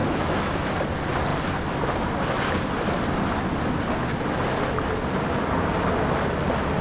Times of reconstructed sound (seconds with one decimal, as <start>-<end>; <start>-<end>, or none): 0.0-0.7